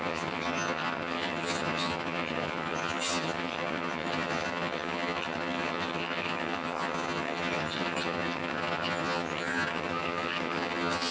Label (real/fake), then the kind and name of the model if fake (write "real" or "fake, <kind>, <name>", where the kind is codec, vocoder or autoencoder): fake, vocoder, HiFi-GAN